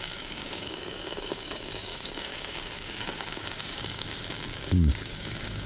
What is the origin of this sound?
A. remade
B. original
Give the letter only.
A